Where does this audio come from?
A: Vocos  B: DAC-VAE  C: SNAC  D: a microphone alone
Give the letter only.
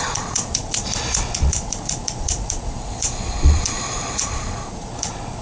A